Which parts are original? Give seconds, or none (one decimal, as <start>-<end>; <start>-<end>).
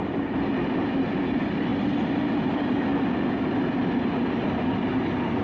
0.0-5.4